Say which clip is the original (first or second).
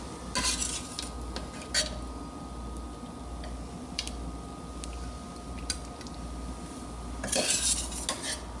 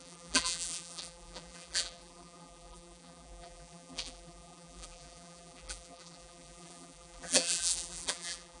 first